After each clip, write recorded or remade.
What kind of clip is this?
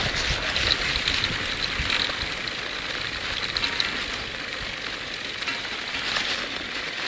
recorded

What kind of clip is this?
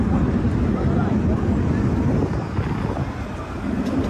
recorded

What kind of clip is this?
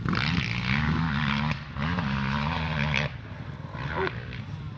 recorded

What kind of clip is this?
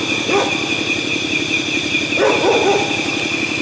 recorded